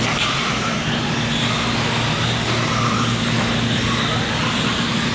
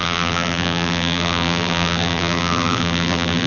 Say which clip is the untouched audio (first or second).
first